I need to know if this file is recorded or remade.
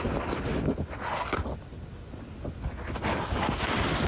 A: recorded